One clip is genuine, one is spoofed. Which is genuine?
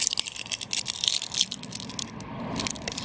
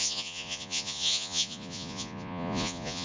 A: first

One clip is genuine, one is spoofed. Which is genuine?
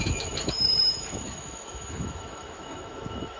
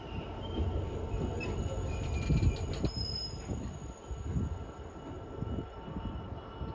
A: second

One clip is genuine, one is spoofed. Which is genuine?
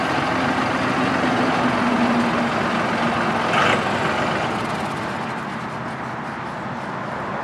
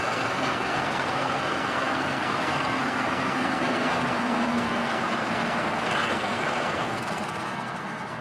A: first